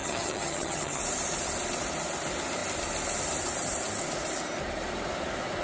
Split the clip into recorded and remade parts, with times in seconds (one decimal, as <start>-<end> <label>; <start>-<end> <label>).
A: 0.0-1.0 remade; 1.0-5.6 recorded